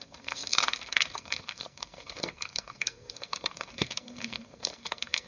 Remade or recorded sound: remade